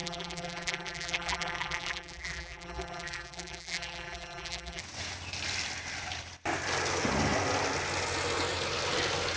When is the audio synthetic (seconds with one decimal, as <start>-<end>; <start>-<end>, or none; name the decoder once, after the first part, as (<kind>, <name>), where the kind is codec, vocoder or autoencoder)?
0.0-4.8 (vocoder, BigVGAN v2)